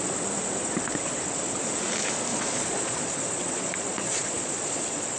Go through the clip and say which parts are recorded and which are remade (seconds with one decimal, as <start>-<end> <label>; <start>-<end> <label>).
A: 0.0-2.3 recorded; 2.3-5.2 remade